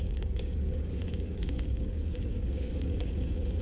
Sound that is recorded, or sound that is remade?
remade